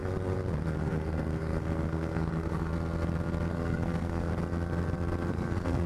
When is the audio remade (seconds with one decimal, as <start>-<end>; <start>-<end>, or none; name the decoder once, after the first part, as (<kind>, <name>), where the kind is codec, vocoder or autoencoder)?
0.8-2.7 (codec, SNAC); 3.5-4.3; 5.3-5.9